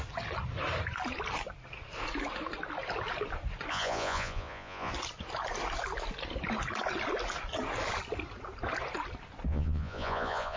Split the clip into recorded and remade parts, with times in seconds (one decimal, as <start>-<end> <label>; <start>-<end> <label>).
0.0-3.7 recorded; 3.7-4.9 remade; 4.9-9.5 recorded; 9.5-10.6 remade